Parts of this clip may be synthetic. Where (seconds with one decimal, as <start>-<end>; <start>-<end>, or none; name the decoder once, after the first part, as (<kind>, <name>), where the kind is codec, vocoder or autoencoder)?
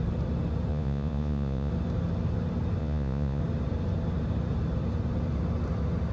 0.7-1.7 (vocoder, Vocos); 2.8-3.4